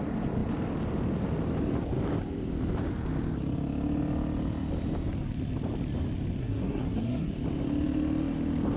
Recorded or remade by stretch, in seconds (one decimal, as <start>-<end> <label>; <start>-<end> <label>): 0.0-6.4 recorded; 6.4-7.3 remade; 7.3-8.8 recorded